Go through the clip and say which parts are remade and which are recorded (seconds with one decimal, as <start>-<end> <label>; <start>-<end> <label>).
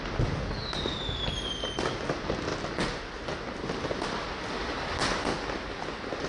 0.0-6.3 recorded